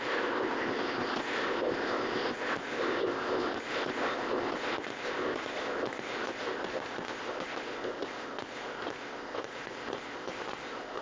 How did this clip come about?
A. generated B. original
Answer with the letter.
A